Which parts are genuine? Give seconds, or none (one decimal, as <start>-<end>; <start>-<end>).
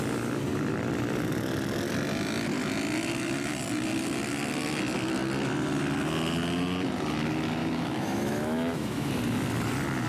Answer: 0.0-7.6; 9.1-10.1